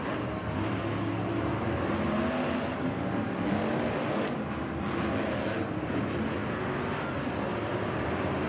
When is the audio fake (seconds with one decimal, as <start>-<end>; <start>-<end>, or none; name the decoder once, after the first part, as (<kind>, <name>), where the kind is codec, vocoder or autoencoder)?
2.7-4.3 (codec, DAC)